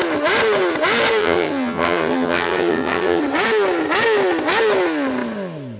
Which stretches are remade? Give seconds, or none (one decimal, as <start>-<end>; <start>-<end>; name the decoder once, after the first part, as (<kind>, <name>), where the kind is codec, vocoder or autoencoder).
1.2-3.2 (vocoder, HiFi-GAN)